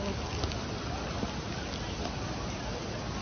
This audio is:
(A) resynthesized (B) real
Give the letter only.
B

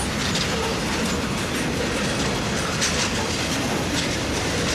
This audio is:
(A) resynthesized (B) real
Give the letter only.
B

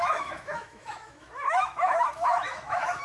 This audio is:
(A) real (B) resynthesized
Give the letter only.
B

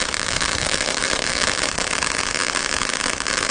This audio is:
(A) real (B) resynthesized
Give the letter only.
B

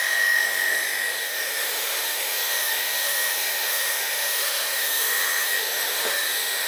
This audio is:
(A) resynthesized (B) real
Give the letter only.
A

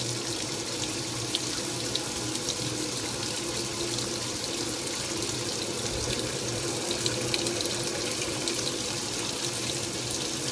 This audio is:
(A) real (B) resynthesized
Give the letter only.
A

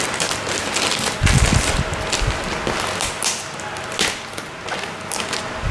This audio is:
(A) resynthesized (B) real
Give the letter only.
B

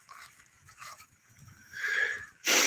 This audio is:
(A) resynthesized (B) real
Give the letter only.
A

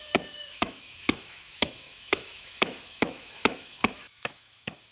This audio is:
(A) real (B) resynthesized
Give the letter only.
B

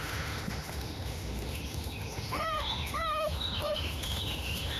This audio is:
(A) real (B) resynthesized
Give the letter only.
B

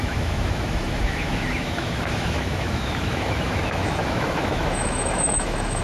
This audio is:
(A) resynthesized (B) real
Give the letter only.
A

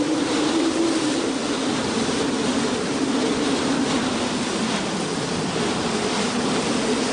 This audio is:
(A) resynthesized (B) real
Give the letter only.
B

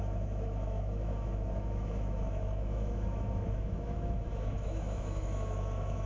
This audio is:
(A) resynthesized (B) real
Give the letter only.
A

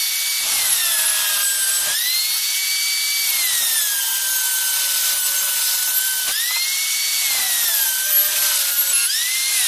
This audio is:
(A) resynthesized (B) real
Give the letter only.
B